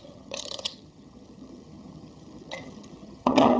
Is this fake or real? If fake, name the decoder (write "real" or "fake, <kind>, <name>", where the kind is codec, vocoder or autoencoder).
fake, vocoder, HiFi-GAN